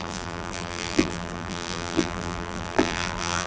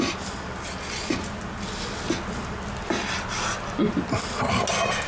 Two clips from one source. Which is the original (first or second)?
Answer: second